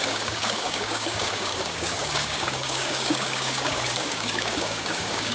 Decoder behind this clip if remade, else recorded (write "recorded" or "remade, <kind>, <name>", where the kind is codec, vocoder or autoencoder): remade, codec, DAC